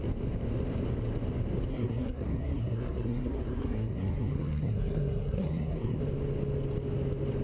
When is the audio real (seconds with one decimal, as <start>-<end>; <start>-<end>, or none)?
0.0-1.7; 6.0-7.4